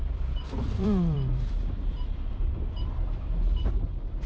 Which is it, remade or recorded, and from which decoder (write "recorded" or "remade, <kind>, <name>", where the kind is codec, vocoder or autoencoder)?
remade, vocoder, BigVGAN v2